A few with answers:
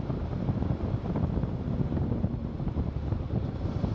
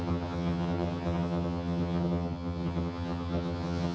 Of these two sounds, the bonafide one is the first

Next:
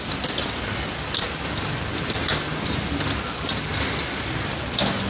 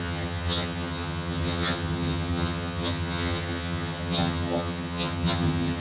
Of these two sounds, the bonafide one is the first